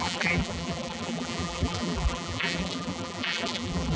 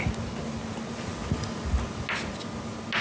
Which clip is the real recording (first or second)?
second